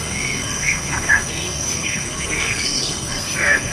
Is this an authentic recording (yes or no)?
no